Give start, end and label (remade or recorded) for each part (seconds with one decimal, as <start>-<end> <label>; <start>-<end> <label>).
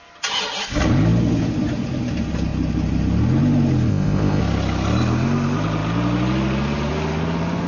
0.0-3.9 recorded; 3.9-4.4 remade; 4.4-7.7 recorded